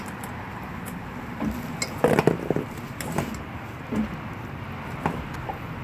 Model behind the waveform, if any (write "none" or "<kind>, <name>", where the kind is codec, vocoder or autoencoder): none